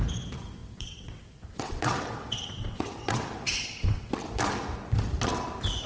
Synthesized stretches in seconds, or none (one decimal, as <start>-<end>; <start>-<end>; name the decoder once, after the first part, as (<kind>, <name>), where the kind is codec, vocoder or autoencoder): 0.6-4.1 (vocoder, WaveNeXt)